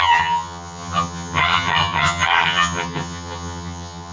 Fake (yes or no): yes